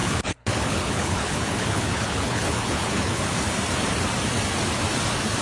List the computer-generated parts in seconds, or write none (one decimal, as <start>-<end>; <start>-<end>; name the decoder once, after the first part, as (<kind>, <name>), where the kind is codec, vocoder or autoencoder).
0.0-3.2 (codec, HILCodec)